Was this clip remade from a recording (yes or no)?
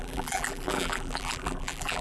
yes